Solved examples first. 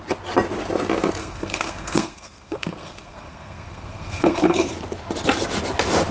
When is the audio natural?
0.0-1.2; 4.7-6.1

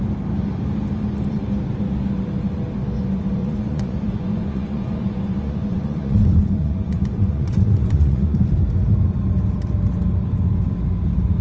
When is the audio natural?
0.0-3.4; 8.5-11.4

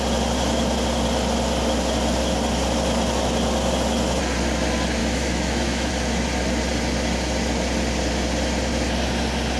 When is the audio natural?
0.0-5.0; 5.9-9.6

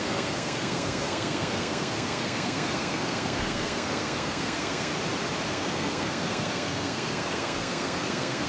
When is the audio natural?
4.9-5.5

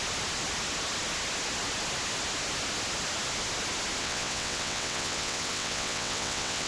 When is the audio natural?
0.0-4.0

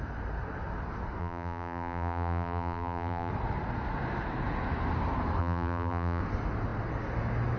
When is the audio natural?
0.0-1.2; 3.3-5.4; 6.2-7.6